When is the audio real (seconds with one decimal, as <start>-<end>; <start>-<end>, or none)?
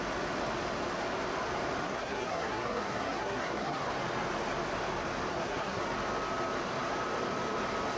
0.0-1.8; 3.9-5.3; 5.8-8.0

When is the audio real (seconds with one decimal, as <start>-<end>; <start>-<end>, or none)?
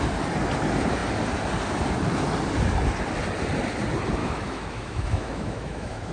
0.0-4.2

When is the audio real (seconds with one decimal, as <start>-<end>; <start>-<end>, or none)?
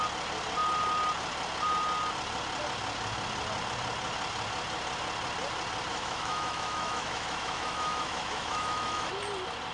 0.0-5.9; 9.2-9.7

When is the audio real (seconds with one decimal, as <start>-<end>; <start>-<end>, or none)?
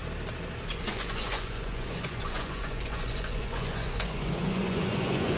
0.0-0.7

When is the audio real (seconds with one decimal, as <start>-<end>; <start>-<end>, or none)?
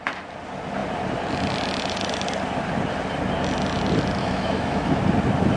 0.0-4.2; 5.0-5.6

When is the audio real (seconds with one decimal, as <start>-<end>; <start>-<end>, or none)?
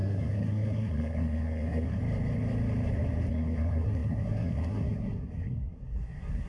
2.0-3.3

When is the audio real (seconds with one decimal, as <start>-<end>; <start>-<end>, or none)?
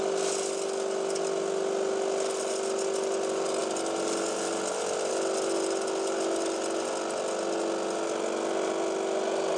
0.0-9.6